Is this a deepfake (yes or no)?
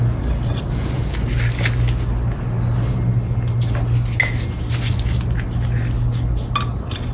no